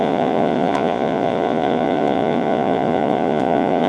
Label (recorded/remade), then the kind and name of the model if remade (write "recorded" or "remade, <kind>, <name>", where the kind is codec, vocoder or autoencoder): remade, vocoder, Vocos